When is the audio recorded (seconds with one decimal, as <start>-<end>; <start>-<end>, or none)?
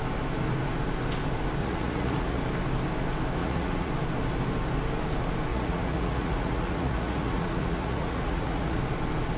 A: 0.0-1.6; 2.4-3.4; 3.9-5.5; 8.8-9.4